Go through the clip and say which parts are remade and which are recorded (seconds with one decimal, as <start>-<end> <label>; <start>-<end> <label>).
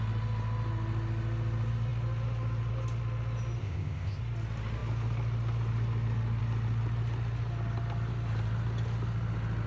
0.0-3.6 recorded; 3.6-4.2 remade; 4.2-9.7 recorded